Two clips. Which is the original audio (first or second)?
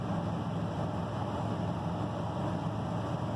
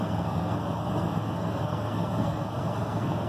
first